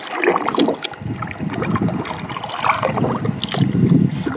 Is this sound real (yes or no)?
yes